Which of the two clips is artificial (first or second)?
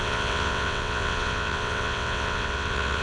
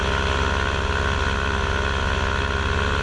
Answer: first